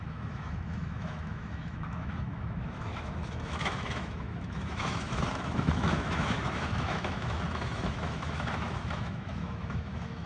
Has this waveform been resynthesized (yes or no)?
yes